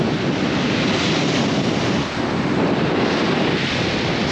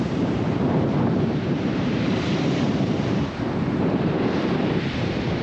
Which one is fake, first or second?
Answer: second